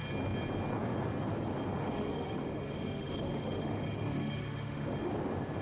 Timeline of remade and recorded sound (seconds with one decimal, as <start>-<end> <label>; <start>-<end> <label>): 0.0-1.7 recorded; 1.7-5.1 remade; 5.1-5.6 recorded